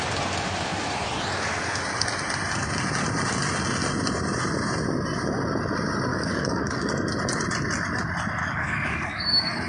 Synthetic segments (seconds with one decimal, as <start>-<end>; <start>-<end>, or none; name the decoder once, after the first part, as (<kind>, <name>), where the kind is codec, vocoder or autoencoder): 6.1-6.9 (codec, DAC); 8.4-9.7